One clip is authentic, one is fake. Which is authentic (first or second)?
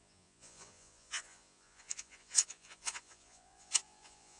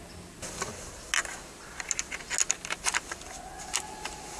second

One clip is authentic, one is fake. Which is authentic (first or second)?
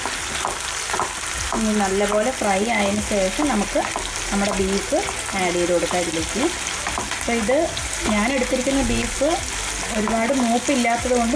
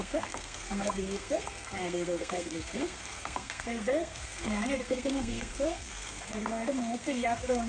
first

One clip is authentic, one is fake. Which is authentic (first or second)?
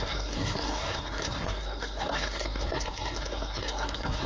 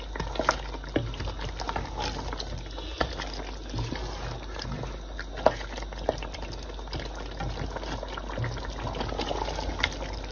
second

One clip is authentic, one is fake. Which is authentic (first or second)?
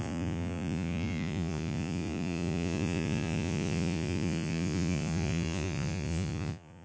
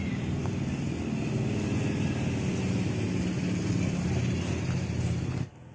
second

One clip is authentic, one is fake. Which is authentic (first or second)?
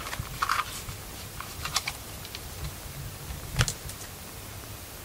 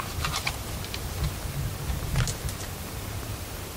first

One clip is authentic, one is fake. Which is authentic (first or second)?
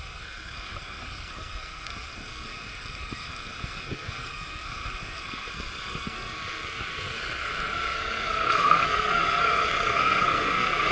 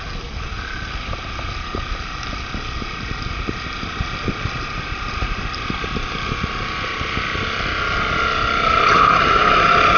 second